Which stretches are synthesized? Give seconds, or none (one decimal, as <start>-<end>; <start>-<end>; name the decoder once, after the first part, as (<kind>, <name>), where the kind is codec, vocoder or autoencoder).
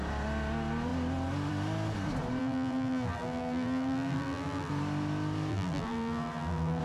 2.4-4.7 (vocoder, BigVGAN v2); 5.5-6.8